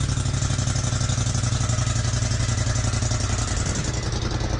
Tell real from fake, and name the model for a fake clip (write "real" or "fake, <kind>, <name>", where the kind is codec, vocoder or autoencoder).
real